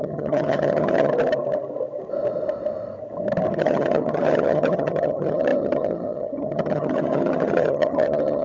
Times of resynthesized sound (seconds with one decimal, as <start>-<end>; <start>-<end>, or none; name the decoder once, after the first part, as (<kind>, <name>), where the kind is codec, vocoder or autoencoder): 0.0-1.1 (vocoder, HiFi-GAN); 3.5-8.4